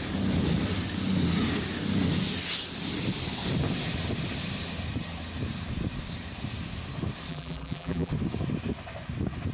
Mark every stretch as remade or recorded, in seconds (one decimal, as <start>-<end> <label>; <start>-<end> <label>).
0.0-7.3 recorded; 7.3-8.1 remade; 8.1-9.5 recorded